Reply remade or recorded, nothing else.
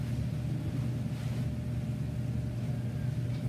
recorded